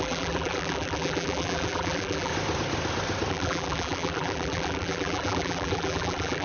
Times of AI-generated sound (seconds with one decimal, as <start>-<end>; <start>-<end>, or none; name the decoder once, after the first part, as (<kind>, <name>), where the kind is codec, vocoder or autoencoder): 0.0-2.3 (vocoder, BigVGAN v2); 3.3-6.4